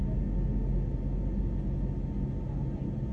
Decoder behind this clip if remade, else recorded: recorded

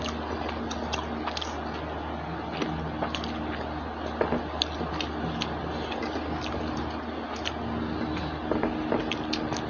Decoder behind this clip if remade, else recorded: recorded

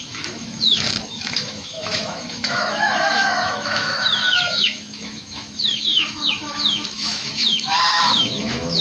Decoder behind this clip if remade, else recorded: remade, autoencoder, DAC-VAE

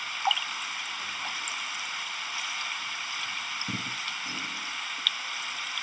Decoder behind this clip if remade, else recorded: recorded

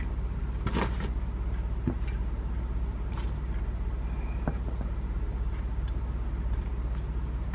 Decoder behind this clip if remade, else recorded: recorded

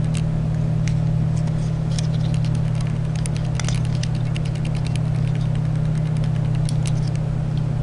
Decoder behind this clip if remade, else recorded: recorded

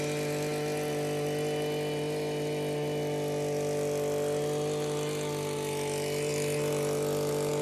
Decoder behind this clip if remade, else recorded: recorded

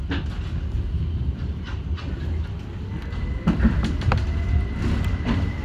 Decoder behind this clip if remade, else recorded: recorded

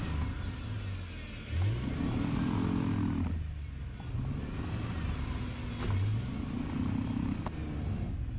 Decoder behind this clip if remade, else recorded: recorded